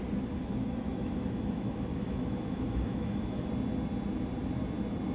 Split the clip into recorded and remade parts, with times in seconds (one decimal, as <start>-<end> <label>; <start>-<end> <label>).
0.0-0.4 recorded; 0.4-3.5 remade; 3.5-5.1 recorded